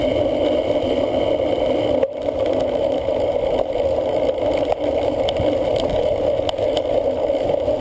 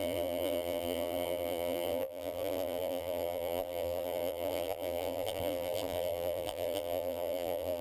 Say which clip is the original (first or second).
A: first